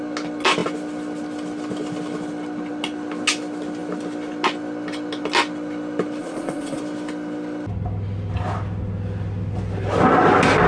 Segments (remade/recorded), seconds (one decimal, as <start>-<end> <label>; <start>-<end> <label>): 0.0-6.2 recorded; 6.2-6.8 remade; 6.8-10.7 recorded

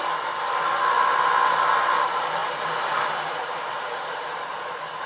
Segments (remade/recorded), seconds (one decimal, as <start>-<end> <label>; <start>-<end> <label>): 0.0-5.1 remade

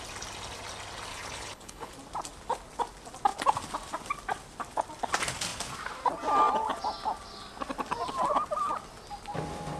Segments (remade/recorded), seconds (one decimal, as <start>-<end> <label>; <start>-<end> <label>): 0.0-1.1 recorded; 1.1-1.9 remade; 1.9-9.8 recorded

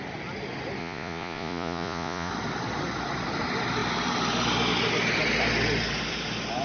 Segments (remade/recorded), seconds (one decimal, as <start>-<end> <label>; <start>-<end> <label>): 0.0-0.8 recorded; 0.8-2.3 remade; 2.3-6.6 recorded

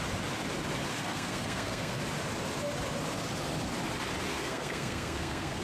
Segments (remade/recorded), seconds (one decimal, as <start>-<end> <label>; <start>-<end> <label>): 0.0-0.9 recorded; 0.9-2.0 remade; 2.0-4.3 recorded; 4.3-5.6 remade

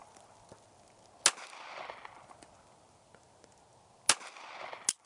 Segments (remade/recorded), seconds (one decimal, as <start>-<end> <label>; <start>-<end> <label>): 0.0-5.1 recorded

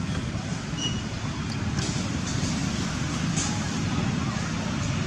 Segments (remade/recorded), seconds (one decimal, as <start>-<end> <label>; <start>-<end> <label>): 0.0-0.5 recorded; 0.5-1.0 remade; 1.0-5.1 recorded

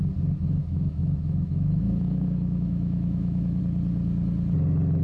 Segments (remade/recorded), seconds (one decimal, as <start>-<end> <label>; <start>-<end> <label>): 0.0-0.6 recorded; 0.6-3.6 remade; 3.6-5.0 recorded